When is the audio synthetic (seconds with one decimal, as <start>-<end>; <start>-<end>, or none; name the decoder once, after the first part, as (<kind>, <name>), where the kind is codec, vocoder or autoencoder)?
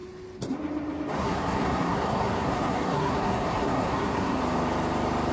1.2-4.4 (codec, SNAC)